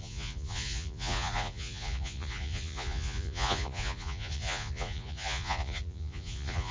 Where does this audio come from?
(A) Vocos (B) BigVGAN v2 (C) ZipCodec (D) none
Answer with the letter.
A